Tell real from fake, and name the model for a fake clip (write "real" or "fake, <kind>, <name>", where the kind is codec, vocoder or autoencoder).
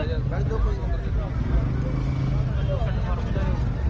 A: real